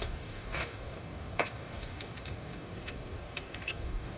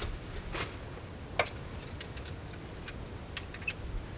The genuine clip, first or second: second